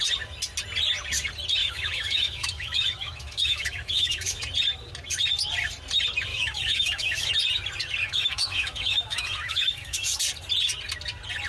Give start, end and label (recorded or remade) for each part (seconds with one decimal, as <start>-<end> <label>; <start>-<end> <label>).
0.0-1.6 recorded; 1.6-4.4 remade; 4.4-6.3 recorded; 6.3-7.3 remade; 7.3-8.0 recorded; 8.0-10.2 remade; 10.2-11.5 recorded